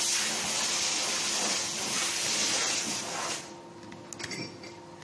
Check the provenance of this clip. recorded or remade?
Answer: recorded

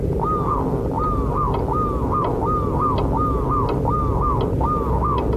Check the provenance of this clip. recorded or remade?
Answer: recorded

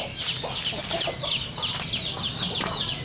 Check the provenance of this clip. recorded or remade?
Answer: recorded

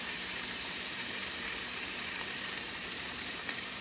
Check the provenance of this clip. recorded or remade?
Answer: remade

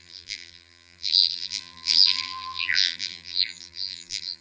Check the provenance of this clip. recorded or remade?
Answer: remade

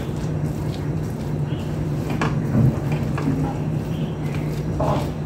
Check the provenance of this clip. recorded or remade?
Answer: remade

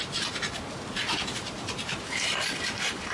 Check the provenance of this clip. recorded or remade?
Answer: remade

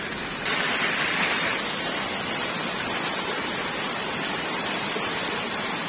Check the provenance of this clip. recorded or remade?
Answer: remade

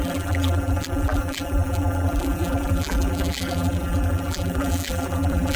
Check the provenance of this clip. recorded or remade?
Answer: remade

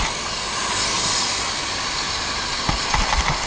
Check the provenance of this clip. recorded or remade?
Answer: recorded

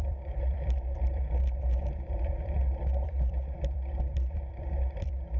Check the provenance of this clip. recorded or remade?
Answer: remade